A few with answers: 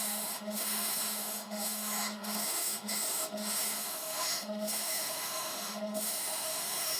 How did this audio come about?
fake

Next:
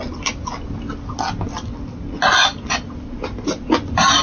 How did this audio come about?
real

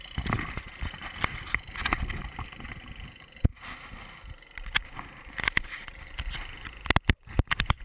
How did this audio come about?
real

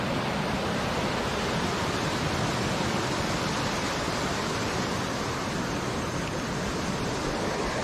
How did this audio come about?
real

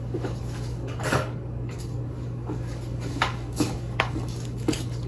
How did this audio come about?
fake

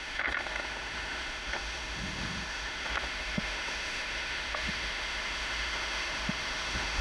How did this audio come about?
fake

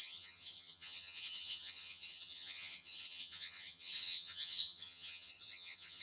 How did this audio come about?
fake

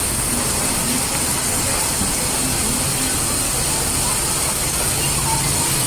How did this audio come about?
real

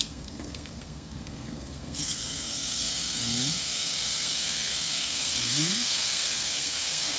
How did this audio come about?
fake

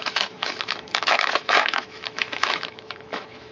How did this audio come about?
fake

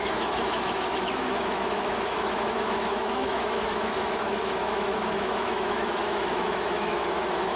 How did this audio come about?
fake